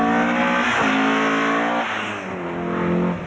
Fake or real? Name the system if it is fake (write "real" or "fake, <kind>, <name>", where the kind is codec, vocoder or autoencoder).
real